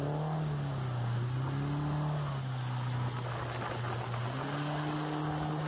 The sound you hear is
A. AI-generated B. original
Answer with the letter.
B